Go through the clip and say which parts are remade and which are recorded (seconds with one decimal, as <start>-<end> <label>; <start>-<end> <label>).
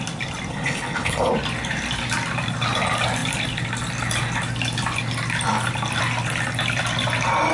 0.0-0.5 recorded; 0.5-1.3 remade; 1.3-7.5 recorded